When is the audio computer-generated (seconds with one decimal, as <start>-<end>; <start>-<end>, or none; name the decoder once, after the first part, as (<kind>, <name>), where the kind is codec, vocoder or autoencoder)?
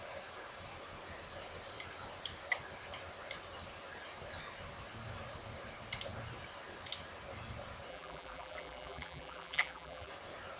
7.9-10.1 (vocoder, BigVGAN v2)